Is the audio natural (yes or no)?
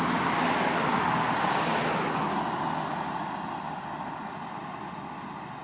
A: yes